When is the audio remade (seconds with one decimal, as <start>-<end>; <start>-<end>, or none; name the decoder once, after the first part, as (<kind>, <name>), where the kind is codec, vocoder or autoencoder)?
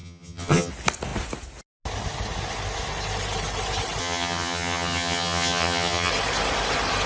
0.0-0.7 (vocoder, HiFi-GAN); 4.0-6.1